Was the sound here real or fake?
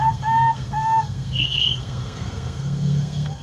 fake